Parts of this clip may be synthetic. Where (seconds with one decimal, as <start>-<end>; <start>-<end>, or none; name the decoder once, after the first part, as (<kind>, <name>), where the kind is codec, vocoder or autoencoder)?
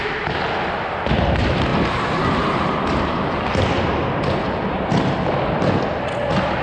none